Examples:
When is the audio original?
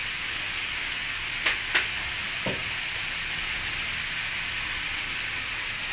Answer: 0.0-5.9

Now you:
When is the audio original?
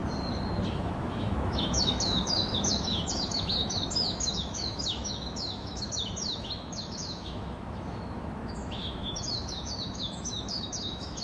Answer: 0.0-0.7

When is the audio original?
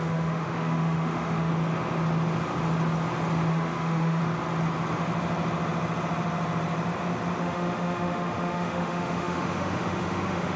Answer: 1.5-3.5; 4.2-7.4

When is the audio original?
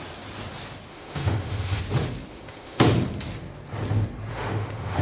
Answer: 0.0-0.9; 1.8-2.3; 2.9-4.3